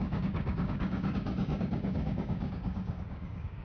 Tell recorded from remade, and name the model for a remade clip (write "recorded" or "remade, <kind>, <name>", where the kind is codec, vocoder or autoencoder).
remade, codec, DAC